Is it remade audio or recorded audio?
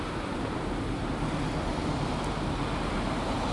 recorded